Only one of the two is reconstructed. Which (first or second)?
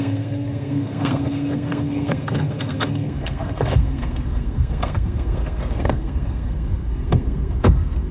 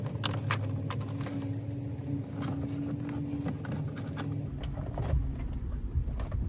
first